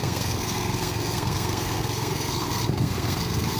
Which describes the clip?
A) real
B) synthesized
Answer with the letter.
B